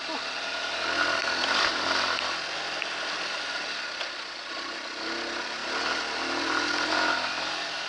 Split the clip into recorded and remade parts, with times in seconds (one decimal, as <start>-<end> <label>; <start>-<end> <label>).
0.0-7.9 recorded